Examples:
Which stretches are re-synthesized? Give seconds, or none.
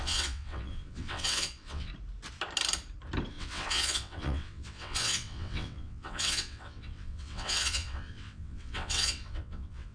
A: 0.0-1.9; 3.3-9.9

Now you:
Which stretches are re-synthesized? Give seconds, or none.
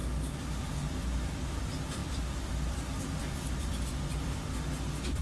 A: 0.0-5.2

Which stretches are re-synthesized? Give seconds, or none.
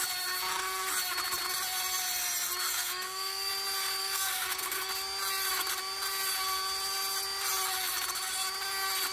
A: 2.7-3.5; 4.0-4.9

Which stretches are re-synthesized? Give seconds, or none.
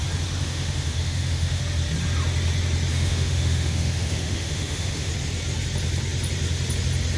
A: 0.4-1.6; 2.9-5.1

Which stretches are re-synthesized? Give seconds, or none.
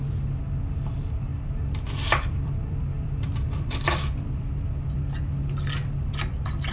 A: 1.3-5.2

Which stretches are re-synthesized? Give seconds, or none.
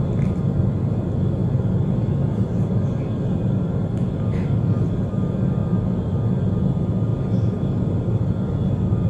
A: none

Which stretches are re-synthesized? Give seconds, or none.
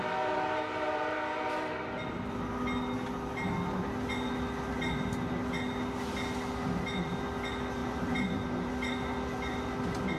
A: 7.8-8.7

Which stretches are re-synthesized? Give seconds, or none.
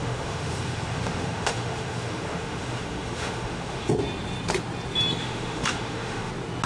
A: 0.0-3.9; 5.2-6.3